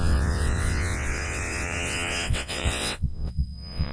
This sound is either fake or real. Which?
fake